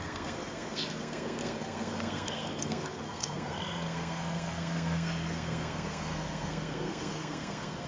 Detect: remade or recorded remade